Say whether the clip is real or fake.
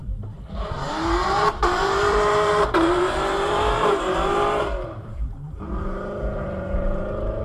fake